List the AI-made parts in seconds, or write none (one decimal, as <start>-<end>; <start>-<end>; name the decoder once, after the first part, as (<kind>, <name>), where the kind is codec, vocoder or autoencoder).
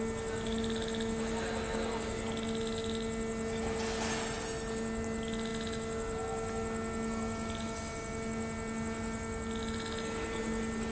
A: none